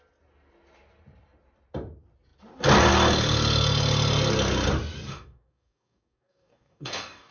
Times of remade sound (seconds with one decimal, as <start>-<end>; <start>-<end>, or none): 5.1-7.3